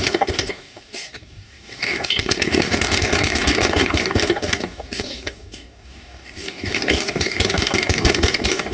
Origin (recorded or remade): remade